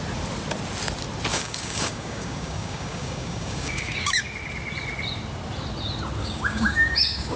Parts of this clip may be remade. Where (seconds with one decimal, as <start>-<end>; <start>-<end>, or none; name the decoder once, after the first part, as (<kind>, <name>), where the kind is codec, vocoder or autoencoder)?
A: 1.3-4.2 (codec, DAC); 6.2-7.4

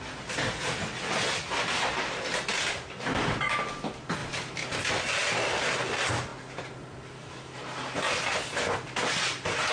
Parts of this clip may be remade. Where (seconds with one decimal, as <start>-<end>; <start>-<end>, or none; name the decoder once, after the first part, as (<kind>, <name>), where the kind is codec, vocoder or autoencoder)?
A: none

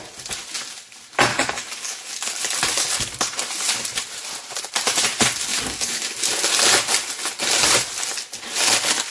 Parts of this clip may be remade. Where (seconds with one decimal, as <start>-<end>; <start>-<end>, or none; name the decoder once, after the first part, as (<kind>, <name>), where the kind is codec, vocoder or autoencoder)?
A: 1.3-2.4 (codec, DAC); 5.5-6.0

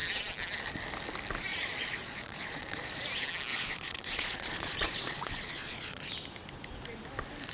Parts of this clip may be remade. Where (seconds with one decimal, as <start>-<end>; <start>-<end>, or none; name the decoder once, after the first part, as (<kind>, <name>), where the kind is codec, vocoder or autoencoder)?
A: 1.5-3.0 (vocoder, Vocos); 3.5-6.1

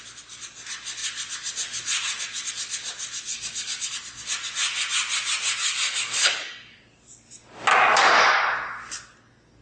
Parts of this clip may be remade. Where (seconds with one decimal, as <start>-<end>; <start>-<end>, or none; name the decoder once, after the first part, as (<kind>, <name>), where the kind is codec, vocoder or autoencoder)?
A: 3.3-3.9 (codec, DAC); 5.6-6.8; 7.7-8.4

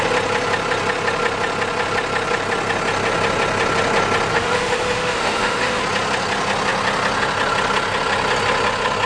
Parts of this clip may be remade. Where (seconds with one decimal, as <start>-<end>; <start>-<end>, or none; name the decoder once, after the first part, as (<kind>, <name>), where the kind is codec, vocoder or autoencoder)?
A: 4.3-5.8 (autoencoder, DAC-VAE)